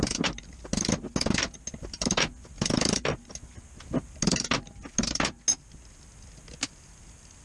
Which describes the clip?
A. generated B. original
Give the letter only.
B